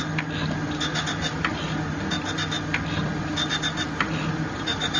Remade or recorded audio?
recorded